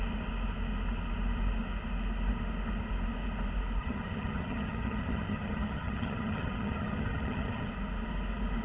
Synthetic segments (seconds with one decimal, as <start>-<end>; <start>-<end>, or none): 3.8-7.7